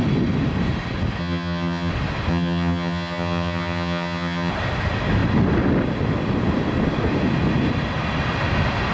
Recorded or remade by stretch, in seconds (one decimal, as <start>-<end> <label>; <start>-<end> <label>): 0.0-1.2 recorded; 1.2-1.9 remade; 1.9-2.3 recorded; 2.3-4.5 remade; 4.5-8.9 recorded